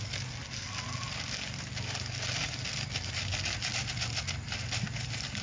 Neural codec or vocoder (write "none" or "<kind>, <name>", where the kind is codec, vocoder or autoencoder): none